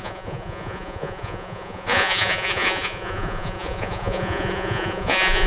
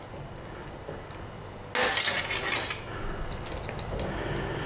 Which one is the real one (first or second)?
second